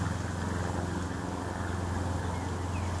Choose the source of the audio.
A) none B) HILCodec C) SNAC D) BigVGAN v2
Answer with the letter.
A